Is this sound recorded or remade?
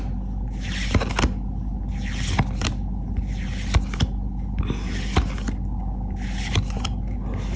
recorded